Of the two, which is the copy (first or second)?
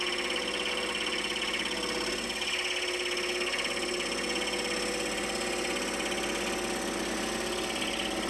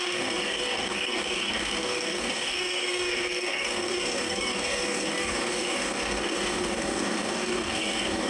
second